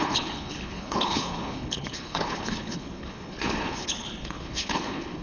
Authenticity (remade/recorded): remade